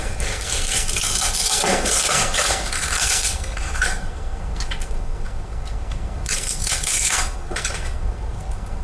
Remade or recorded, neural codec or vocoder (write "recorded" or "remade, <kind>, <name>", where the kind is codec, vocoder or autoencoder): remade, codec, SNAC